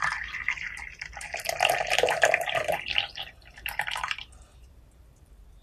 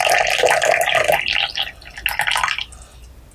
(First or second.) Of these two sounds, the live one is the second